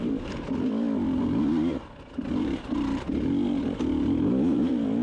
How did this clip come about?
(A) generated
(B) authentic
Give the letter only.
B